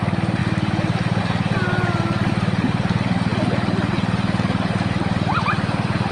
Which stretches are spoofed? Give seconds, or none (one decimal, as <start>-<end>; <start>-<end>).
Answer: none